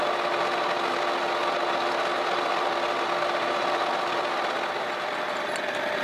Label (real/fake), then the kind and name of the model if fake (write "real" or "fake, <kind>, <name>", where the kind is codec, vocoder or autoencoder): real